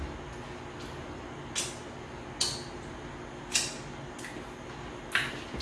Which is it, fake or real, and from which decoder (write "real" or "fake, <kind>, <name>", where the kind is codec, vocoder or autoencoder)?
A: real